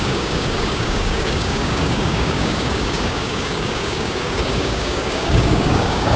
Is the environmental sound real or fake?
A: fake